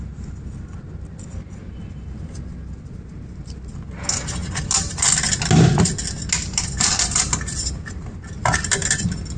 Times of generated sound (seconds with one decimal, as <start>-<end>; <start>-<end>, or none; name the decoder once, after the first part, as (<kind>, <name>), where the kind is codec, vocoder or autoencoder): none